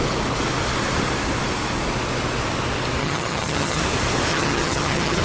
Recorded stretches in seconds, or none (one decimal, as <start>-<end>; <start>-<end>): 0.0-3.0; 3.8-4.3